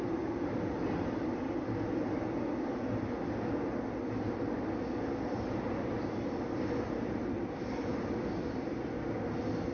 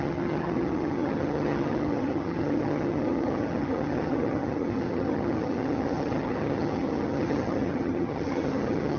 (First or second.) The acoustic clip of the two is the first